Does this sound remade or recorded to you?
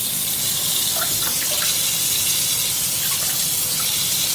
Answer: recorded